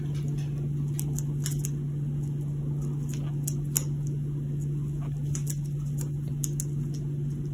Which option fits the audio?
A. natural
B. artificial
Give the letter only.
A